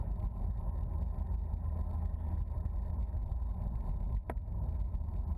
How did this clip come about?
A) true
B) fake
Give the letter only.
A